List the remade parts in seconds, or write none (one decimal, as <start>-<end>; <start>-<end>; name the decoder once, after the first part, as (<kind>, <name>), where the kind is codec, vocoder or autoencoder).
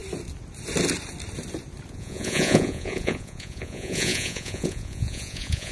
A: 1.9-5.7 (vocoder, Vocos)